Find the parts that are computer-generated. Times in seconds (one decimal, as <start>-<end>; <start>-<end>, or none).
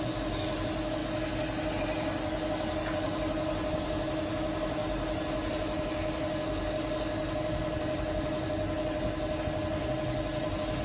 none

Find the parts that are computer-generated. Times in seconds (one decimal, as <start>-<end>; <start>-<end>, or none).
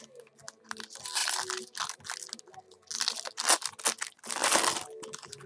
none